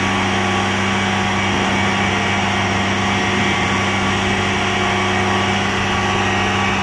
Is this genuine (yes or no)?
yes